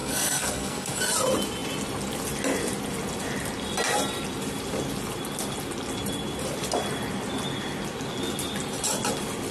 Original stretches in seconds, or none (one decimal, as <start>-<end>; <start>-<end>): 1.0-9.5